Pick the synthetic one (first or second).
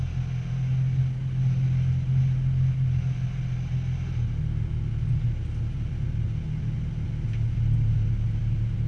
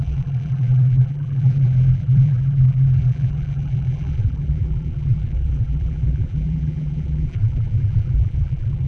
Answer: second